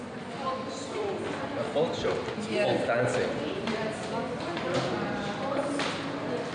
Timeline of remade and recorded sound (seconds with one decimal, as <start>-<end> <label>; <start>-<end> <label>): 0.0-6.5 recorded